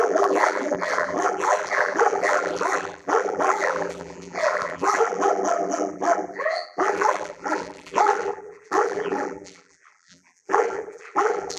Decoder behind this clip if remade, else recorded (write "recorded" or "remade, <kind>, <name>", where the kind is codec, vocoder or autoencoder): remade, vocoder, BigVGAN v2